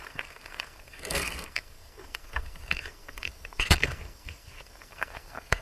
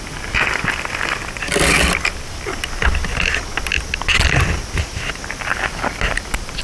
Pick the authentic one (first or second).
second